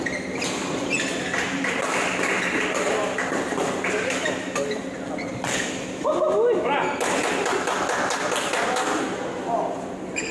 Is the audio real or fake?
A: real